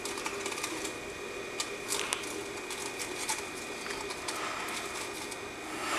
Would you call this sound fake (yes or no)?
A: no